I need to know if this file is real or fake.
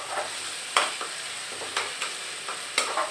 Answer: real